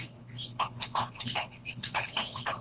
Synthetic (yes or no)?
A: yes